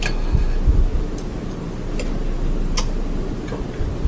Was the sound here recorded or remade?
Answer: recorded